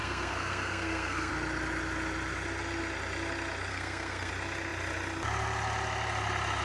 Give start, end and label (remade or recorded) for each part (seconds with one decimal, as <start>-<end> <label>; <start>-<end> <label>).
0.0-1.3 remade; 1.3-3.7 recorded; 3.7-4.3 remade; 4.3-6.6 recorded